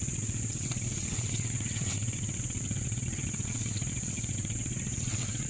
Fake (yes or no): yes